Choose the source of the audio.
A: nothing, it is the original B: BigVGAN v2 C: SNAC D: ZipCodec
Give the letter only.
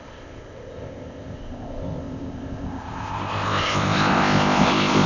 D